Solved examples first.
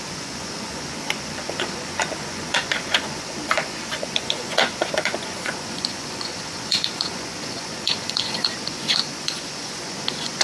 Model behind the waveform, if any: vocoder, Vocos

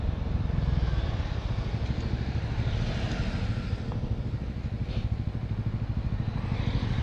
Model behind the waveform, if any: none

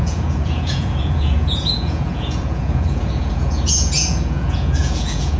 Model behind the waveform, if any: vocoder, Vocos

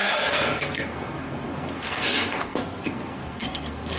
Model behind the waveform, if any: codec, SNAC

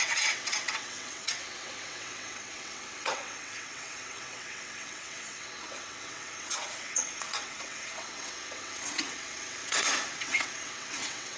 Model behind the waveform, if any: vocoder, WaveNeXt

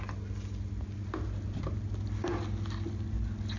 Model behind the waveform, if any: none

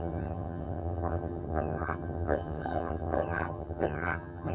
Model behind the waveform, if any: vocoder, HiFi-GAN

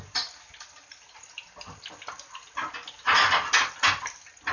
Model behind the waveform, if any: none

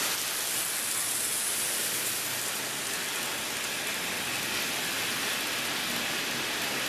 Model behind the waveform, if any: none